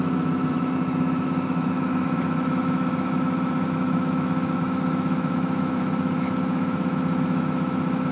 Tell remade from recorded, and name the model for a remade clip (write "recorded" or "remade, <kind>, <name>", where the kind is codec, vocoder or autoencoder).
remade, autoencoder, DAC-VAE